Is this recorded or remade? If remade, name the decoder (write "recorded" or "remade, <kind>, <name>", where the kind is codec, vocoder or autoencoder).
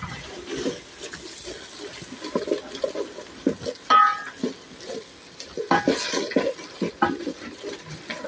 recorded